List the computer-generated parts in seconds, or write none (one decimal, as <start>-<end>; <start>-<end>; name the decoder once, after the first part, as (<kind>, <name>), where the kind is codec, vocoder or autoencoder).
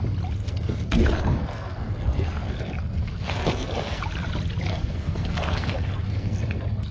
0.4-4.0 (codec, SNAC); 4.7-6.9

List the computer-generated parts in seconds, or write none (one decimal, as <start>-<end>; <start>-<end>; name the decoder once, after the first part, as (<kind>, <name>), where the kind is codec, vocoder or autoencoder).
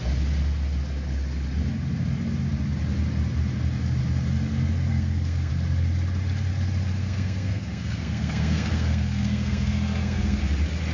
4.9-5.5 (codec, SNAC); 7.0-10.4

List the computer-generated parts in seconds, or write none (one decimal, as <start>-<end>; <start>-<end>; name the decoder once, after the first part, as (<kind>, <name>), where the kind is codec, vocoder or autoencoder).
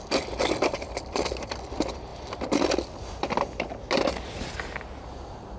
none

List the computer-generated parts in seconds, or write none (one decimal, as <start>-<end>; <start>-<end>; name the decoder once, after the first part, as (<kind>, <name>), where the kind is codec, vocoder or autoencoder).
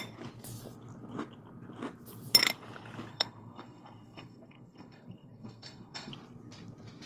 3.1-6.1 (codec, SNAC)